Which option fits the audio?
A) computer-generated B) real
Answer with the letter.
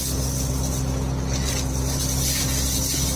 B